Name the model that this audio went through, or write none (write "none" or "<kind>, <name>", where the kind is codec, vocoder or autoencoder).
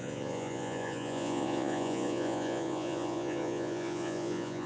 vocoder, Vocos